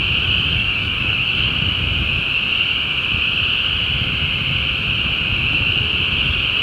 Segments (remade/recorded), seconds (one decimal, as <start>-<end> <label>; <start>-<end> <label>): 0.0-0.5 recorded; 0.5-1.5 remade; 1.5-6.6 recorded